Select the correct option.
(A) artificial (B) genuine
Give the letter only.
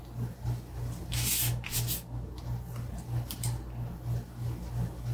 B